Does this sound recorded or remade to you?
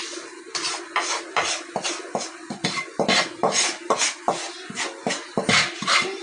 recorded